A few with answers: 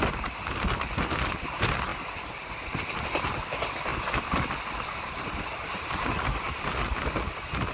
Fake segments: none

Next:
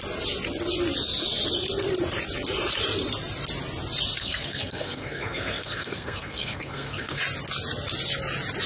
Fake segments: 4.2-7.2 (codec, SNAC)

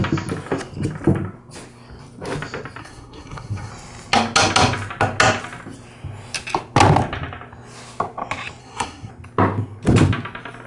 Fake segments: 2.8-3.7 (codec, SNAC); 8.6-9.1